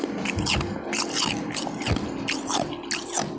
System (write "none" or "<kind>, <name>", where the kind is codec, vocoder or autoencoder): none